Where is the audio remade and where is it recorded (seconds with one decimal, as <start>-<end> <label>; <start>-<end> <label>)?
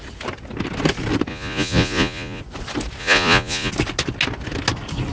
0.0-1.3 recorded; 1.3-2.4 remade; 2.4-3.0 recorded; 3.0-3.7 remade; 3.7-5.1 recorded